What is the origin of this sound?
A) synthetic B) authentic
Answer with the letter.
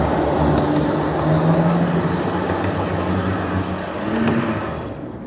B